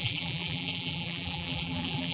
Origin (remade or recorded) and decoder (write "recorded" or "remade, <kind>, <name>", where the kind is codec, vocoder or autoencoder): remade, vocoder, BigVGAN v2